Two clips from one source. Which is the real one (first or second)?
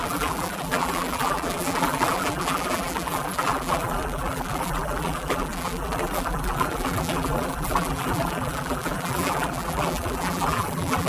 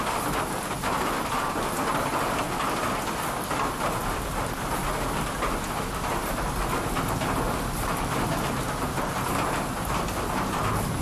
second